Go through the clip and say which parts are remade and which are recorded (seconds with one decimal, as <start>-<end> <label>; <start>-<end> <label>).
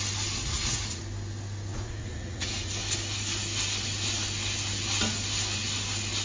0.0-0.4 recorded; 0.4-1.0 remade; 1.0-1.7 recorded; 1.7-2.7 remade; 2.7-6.2 recorded